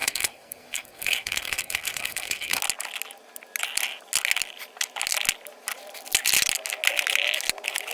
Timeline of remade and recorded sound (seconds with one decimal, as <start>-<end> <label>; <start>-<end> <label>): 0.0-2.6 remade; 2.6-7.9 recorded